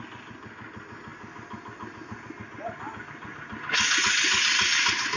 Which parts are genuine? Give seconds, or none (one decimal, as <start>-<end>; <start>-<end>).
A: 0.0-5.2